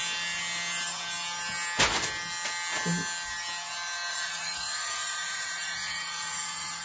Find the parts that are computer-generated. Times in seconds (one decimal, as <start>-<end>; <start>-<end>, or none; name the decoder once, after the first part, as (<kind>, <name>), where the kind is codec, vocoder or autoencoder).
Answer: 4.1-6.8 (vocoder, Vocos)